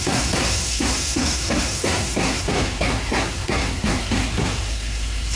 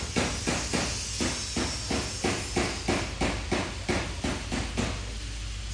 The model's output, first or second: first